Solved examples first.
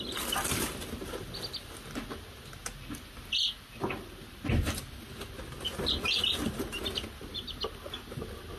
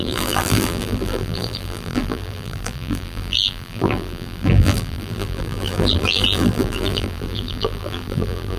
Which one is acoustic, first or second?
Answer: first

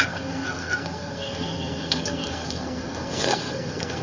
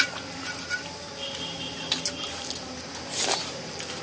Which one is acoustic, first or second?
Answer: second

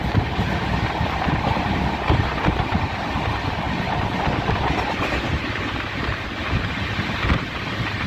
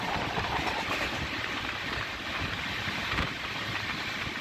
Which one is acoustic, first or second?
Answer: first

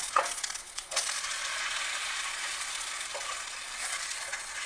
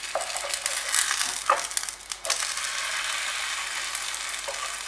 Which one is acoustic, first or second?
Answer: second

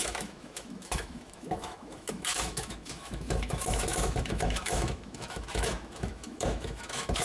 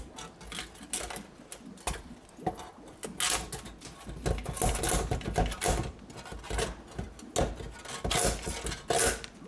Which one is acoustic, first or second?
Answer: second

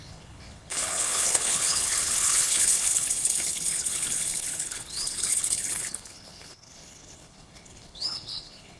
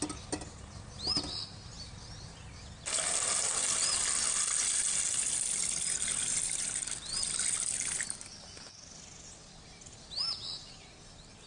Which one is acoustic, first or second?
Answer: second